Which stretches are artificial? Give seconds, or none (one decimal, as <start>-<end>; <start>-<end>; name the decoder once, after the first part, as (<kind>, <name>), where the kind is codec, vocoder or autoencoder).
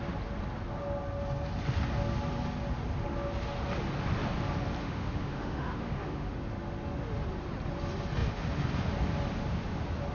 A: 4.8-6.3 (autoencoder, DAC-VAE)